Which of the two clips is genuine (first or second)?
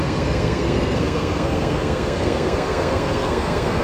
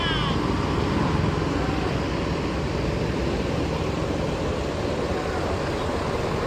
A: second